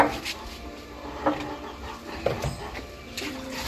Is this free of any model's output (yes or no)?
yes